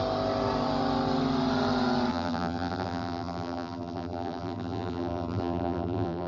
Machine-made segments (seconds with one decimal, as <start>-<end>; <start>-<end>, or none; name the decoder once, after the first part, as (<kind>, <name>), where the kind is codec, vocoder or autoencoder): 2.1-6.3 (vocoder, BigVGAN v2)